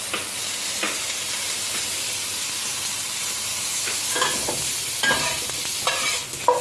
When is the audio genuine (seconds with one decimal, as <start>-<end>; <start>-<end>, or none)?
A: 0.0-3.5; 4.1-6.6